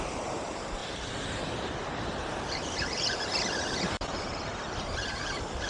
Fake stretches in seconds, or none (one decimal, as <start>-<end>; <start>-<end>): 0.0-5.7